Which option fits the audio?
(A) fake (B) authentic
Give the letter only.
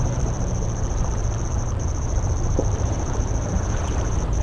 A